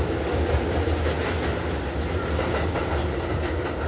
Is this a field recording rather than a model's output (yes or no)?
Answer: yes